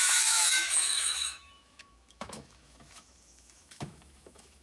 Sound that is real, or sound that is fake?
fake